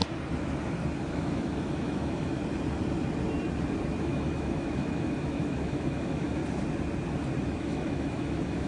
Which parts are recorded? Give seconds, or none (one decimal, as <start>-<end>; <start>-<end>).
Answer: 0.0-1.1; 2.4-4.0; 6.4-7.6

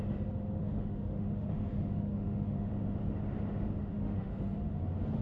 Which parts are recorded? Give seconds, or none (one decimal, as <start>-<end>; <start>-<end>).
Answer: 0.0-0.6; 2.7-3.9; 4.4-5.2

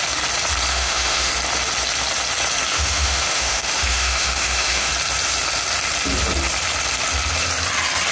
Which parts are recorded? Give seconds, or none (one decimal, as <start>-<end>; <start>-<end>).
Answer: 0.0-0.7; 1.3-2.7; 4.9-8.1

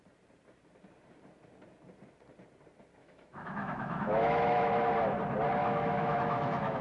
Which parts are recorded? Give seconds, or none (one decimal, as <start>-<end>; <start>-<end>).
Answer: 0.0-3.0; 4.7-5.6

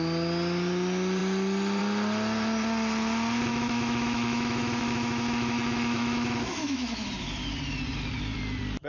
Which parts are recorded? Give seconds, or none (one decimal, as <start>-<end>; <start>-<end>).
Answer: 0.0-3.5; 7.1-8.9

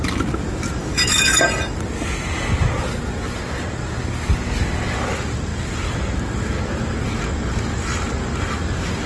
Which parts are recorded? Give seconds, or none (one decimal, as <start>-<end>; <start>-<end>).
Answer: 0.0-0.8; 1.4-9.1

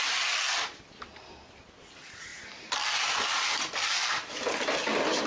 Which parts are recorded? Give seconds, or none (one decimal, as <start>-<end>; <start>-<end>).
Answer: 0.0-5.3

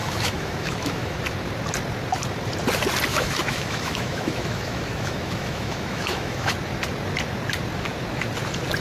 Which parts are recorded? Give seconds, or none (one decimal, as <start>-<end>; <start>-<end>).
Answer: 1.2-3.1; 6.5-8.8